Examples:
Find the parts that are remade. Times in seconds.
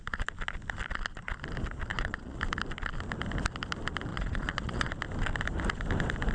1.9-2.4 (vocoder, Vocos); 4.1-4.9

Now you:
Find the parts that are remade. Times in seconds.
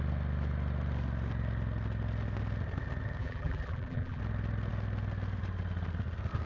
3.2-4.2 (vocoder, BigVGAN v2)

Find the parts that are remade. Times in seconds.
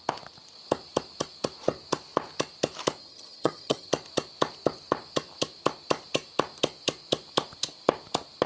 3.0-3.9 (vocoder, HiFi-GAN)